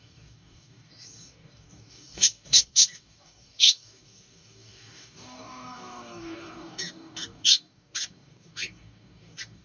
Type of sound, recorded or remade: remade